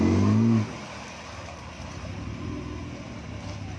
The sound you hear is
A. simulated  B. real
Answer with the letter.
B